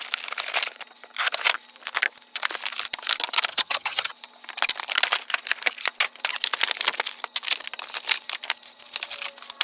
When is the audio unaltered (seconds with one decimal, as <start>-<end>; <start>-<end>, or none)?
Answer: 0.0-3.5; 4.1-9.6